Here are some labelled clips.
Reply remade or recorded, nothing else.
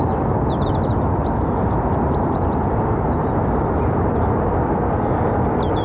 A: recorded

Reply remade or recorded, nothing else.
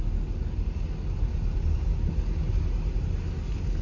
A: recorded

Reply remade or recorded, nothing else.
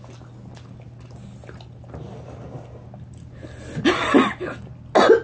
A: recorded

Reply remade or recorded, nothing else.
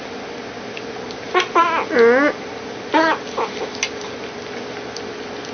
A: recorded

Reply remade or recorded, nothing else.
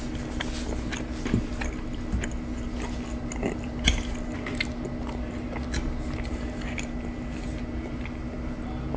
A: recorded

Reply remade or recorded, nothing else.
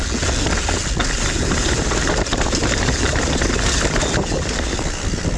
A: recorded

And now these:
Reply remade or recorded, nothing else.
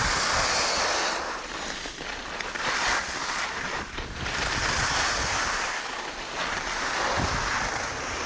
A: recorded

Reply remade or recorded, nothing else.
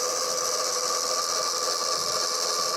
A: recorded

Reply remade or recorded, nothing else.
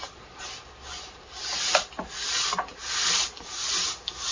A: recorded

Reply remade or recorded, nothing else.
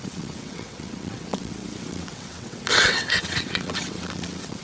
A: remade